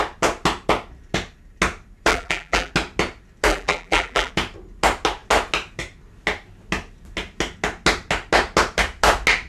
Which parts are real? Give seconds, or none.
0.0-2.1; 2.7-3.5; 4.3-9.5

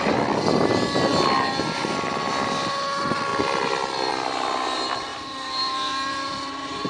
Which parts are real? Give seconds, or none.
0.0-5.1

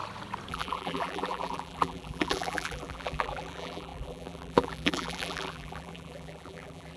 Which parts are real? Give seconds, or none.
0.0-0.5

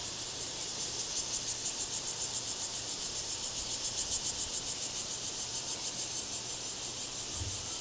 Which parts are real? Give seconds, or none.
1.0-1.6; 5.9-7.8

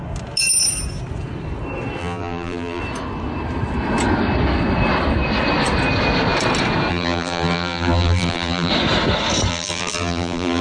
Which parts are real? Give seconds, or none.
0.0-2.0; 2.8-6.9; 8.7-9.5

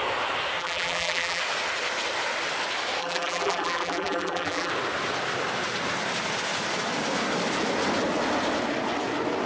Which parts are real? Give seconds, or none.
0.0-0.6; 1.4-3.0; 4.7-9.5

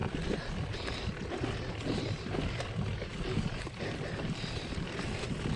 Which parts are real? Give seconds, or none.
0.0-5.6